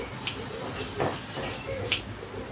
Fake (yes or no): no